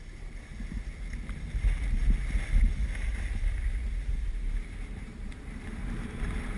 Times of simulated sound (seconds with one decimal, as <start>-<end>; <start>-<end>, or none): 0.0-0.5; 4.1-6.6